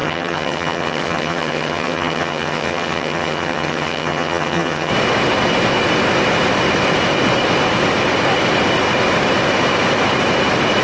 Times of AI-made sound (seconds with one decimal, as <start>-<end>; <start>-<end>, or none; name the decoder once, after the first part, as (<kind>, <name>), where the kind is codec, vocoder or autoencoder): 0.0-4.9 (vocoder, HiFi-GAN)